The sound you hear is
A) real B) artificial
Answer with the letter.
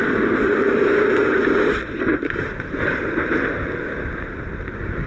A